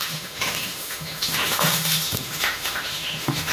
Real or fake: fake